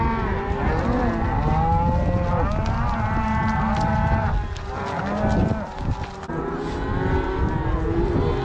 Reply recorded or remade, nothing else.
recorded